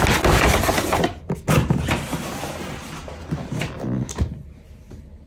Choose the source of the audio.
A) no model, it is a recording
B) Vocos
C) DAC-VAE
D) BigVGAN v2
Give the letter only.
A